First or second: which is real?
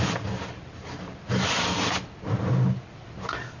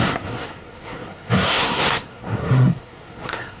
first